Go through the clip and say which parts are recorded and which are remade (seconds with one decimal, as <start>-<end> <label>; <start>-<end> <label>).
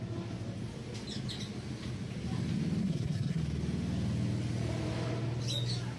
0.0-2.8 recorded; 2.8-3.4 remade; 3.4-6.0 recorded